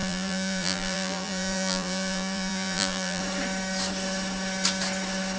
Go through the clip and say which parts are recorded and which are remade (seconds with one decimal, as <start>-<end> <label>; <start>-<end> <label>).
0.0-3.2 remade; 3.2-5.4 recorded